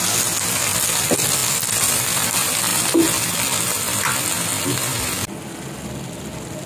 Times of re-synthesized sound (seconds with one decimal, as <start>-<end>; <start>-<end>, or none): none